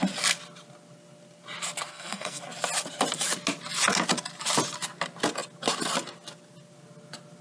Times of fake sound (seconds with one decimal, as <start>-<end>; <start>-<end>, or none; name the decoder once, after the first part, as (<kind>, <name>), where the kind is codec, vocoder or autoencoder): 1.9-2.4 (codec, SNAC)